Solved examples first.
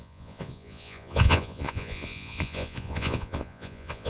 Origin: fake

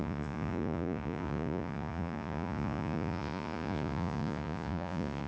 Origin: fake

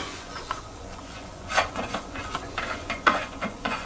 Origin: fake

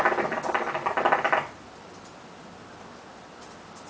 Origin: real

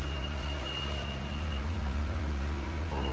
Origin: fake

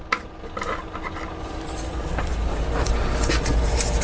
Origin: real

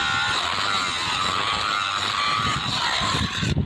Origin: real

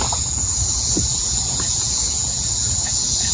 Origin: fake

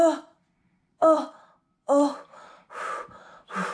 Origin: real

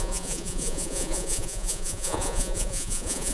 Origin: fake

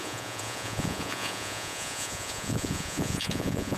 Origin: fake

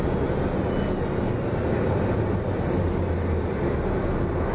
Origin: real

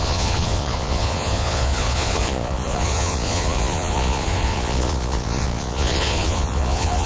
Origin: fake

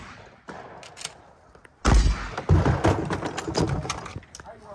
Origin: real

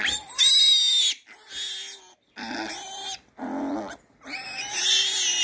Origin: real